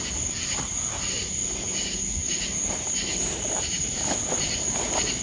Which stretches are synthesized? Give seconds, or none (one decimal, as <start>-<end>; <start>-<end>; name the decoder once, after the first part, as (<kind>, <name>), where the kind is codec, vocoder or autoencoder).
2.2-5.2 (vocoder, BigVGAN v2)